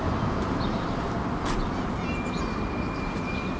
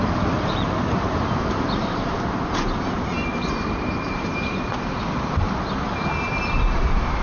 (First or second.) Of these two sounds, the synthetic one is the second